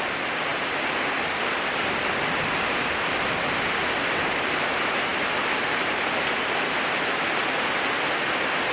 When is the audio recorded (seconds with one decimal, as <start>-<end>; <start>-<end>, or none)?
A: 0.0-8.7